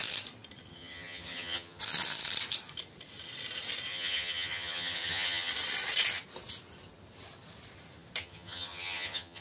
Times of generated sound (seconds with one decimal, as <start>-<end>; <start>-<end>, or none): 0.7-1.8; 3.9-5.5; 8.2-9.4